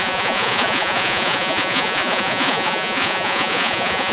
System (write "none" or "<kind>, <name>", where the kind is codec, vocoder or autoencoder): vocoder, Vocos